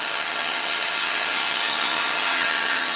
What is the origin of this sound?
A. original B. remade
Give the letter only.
B